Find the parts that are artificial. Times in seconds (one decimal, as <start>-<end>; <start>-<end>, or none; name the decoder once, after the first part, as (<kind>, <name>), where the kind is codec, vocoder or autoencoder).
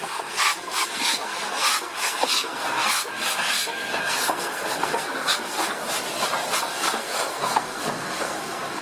0.0-5.8 (codec, SNAC); 6.6-8.8